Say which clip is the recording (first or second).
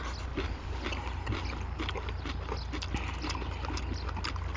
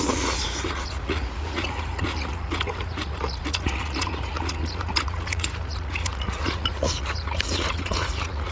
first